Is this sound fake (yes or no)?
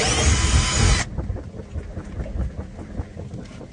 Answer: no